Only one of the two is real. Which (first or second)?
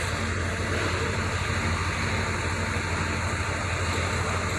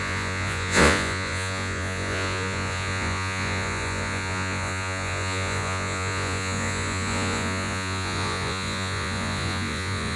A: first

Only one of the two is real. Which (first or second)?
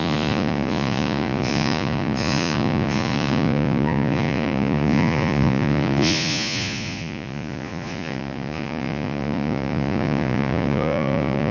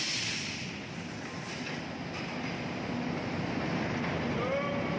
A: second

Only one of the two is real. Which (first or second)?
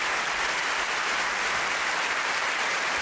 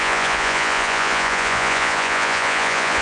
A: first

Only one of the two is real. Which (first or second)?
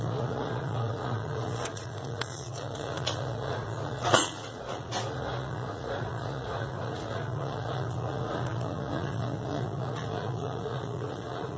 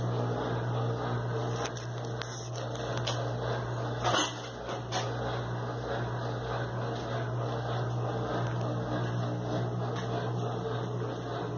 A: second